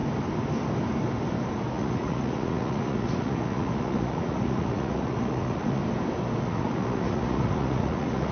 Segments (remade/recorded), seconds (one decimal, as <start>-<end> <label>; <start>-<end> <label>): 0.0-1.7 recorded; 1.7-5.8 remade; 5.8-6.4 recorded; 6.4-8.3 remade